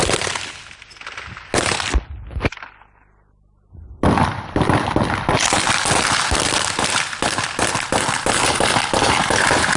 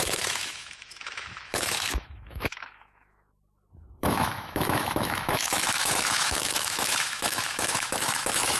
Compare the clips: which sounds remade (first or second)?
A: second